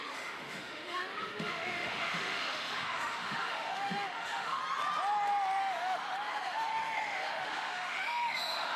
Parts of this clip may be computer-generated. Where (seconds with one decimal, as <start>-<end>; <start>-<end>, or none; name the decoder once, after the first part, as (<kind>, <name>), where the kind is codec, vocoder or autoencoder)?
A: 0.0-4.6 (autoencoder, DAC-VAE); 5.6-8.8